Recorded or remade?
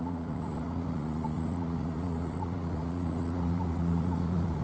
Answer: remade